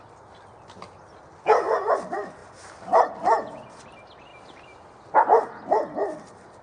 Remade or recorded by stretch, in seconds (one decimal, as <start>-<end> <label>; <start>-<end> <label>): 0.0-6.6 recorded